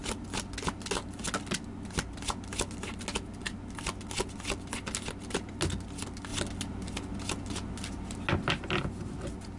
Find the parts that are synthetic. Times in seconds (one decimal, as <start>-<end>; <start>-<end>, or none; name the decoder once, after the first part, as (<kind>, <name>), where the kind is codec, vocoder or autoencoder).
none